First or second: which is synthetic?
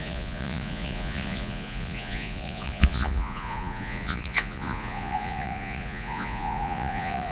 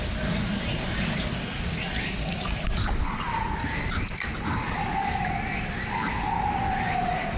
first